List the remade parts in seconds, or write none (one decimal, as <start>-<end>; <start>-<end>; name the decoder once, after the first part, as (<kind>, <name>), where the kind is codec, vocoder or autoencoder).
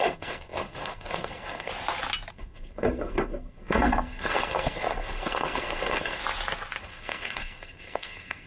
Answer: 0.0-1.7 (codec, SNAC); 2.3-6.2; 6.8-8.5